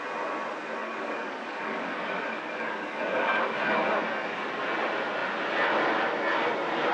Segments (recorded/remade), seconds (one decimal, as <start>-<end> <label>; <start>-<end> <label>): 0.0-0.8 recorded; 0.8-4.6 remade; 4.6-6.9 recorded